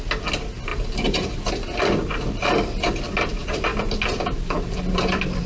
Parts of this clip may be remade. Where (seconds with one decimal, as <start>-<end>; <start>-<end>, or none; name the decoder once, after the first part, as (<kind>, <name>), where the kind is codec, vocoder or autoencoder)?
0.7-1.8 (vocoder, BigVGAN v2)